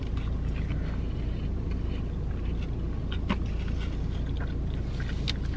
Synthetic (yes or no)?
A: no